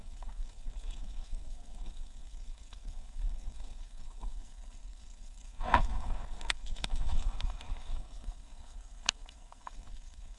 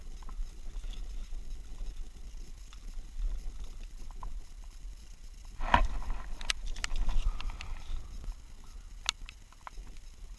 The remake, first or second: first